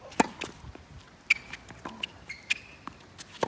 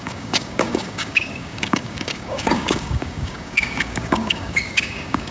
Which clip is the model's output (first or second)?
second